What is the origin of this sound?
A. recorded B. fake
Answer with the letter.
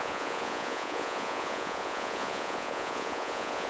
B